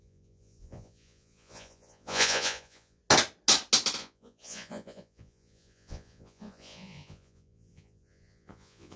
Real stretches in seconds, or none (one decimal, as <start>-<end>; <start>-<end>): 3.0-4.0